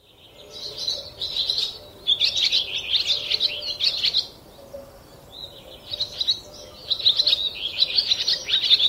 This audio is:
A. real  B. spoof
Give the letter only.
A